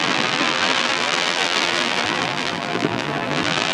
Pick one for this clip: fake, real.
fake